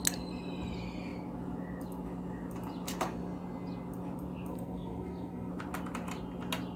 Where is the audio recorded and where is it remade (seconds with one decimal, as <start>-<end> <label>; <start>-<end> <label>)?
0.0-4.5 recorded; 4.5-5.5 remade; 5.5-6.8 recorded